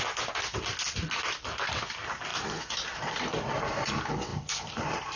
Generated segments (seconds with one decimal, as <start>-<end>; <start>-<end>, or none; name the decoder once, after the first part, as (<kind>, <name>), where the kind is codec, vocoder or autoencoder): 2.3-3.6 (vocoder, BigVGAN v2); 4.3-5.2